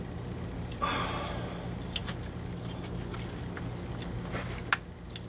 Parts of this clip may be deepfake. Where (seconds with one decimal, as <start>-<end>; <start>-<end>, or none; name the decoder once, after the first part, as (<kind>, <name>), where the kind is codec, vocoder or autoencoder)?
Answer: none